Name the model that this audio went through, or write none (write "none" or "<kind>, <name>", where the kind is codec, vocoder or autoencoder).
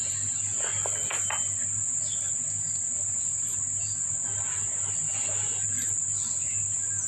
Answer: none